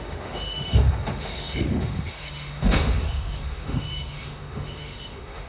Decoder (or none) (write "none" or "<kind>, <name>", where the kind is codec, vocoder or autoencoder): autoencoder, DAC-VAE